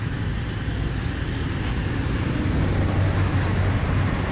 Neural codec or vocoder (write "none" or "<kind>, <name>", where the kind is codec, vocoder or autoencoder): none